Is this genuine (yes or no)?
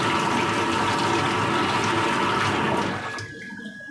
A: yes